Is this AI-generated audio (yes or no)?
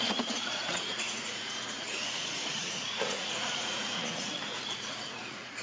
yes